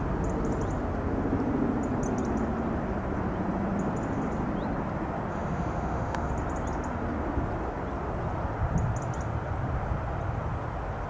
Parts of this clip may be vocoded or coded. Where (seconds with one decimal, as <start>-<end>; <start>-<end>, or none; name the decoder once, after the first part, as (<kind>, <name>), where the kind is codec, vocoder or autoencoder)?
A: 5.3-6.3 (autoencoder, DAC-VAE)